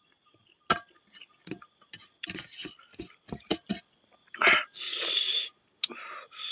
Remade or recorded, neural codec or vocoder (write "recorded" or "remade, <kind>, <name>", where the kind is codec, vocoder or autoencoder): recorded